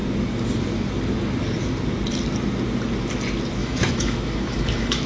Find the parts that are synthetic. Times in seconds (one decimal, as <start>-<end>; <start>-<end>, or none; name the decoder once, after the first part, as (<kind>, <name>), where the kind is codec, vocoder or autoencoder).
3.6-5.1 (autoencoder, DAC-VAE)